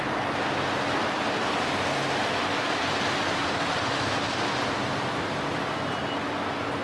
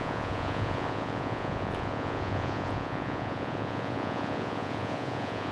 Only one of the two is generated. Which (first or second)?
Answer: second